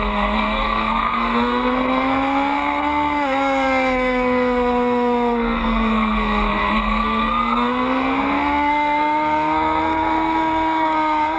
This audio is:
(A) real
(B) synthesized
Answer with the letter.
B